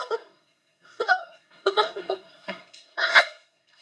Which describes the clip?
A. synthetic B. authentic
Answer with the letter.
A